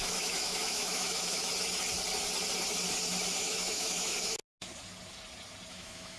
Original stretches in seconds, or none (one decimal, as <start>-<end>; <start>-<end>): 1.5-3.4; 4.4-5.7